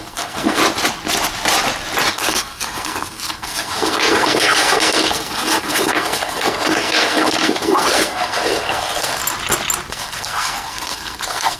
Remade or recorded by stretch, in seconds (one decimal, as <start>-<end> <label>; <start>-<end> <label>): 0.0-0.6 remade; 0.6-2.1 recorded; 2.1-9.2 remade; 9.2-9.9 recorded; 9.9-11.6 remade

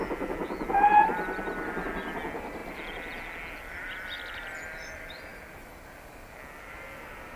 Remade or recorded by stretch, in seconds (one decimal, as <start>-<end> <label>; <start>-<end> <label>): 0.0-7.4 recorded

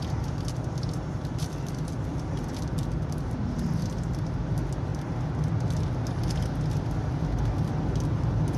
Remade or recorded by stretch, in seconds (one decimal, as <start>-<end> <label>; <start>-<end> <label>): 0.0-8.6 recorded

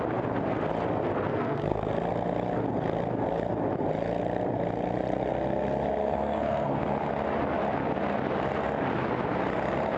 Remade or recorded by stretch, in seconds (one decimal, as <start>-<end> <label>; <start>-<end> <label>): 0.0-1.3 recorded; 1.3-1.9 remade; 1.9-6.0 recorded; 6.0-7.1 remade; 7.1-10.0 recorded

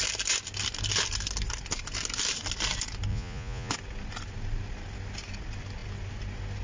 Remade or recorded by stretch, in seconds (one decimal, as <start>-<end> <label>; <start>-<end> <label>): 0.0-3.1 recorded; 3.1-3.7 remade; 3.7-6.6 recorded